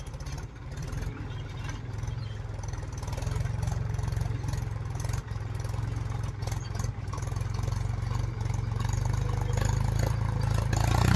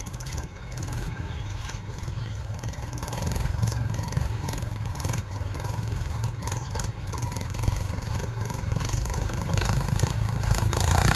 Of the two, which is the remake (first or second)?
second